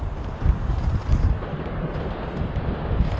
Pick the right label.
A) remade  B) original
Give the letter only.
B